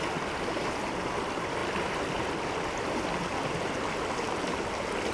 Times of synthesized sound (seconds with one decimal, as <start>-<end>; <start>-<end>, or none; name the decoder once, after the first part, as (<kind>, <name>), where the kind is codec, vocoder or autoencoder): none